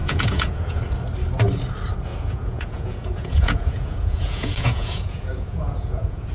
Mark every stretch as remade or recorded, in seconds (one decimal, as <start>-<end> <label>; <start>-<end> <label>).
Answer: 0.0-0.8 remade; 0.8-2.1 recorded; 2.1-6.3 remade

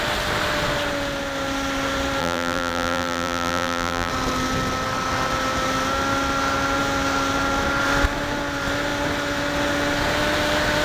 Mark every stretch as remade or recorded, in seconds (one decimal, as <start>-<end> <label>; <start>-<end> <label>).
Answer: 0.0-2.2 recorded; 2.2-4.1 remade; 4.1-10.8 recorded

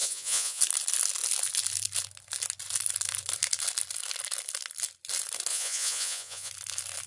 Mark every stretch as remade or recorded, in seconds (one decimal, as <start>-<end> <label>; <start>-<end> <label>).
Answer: 0.0-0.6 remade; 0.6-5.5 recorded; 5.5-6.5 remade; 6.5-7.1 recorded